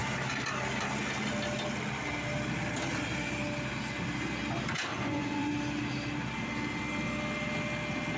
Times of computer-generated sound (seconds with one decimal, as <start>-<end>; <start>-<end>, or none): 4.9-5.5